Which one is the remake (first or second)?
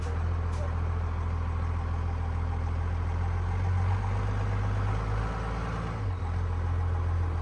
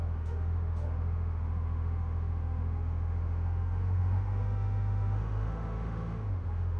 second